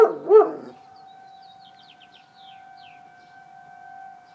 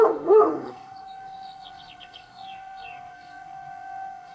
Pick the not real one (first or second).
second